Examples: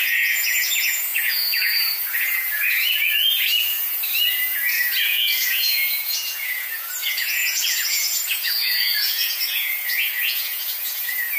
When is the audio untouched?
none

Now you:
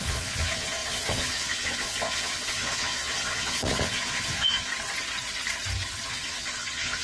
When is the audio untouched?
4.7-6.1

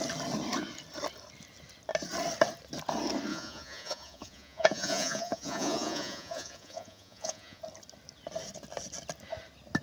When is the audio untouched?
0.0-3.3; 7.6-9.8

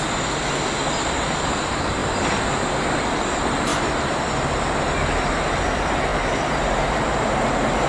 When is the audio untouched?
0.0-7.9

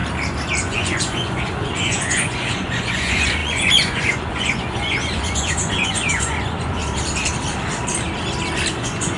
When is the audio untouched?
0.0-0.6; 6.8-8.7

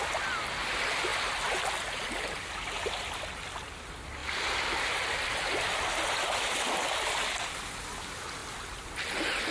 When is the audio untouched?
0.0-9.5